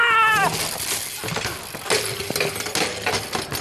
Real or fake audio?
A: real